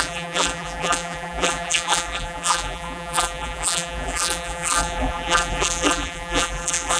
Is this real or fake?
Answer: fake